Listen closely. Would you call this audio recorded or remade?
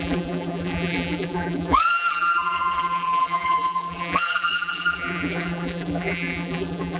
remade